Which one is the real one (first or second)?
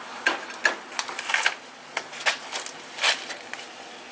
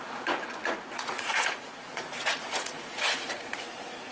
first